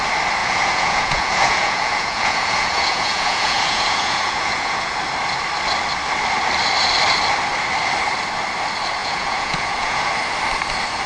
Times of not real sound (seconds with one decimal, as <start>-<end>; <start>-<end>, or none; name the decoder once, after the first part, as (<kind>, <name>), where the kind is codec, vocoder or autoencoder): 0.4-5.0 (vocoder, Vocos); 9.0-10.1